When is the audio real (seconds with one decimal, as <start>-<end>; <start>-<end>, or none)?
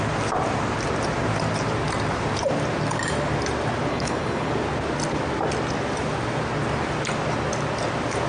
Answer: 0.0-3.9; 4.5-8.3